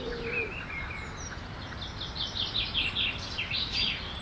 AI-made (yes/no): no